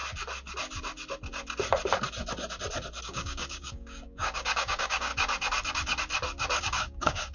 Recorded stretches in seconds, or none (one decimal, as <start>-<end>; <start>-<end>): 0.0-3.0; 5.1-6.6